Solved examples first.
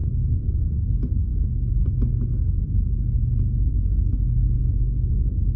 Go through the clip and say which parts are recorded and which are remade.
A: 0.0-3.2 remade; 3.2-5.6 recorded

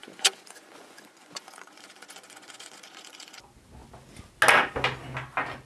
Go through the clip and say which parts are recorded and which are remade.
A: 0.0-3.4 remade; 3.4-5.7 recorded